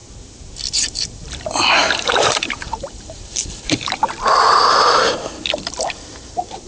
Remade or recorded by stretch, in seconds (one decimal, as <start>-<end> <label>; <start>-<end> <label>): 0.0-0.7 recorded; 0.7-4.0 remade; 4.0-6.1 recorded; 6.1-6.7 remade